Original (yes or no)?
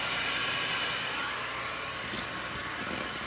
yes